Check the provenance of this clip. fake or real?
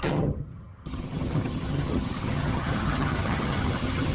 fake